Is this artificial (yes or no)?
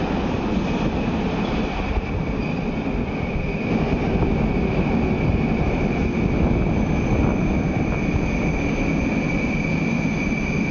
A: no